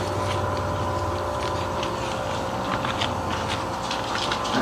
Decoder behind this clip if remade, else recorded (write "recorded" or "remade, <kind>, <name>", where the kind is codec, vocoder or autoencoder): recorded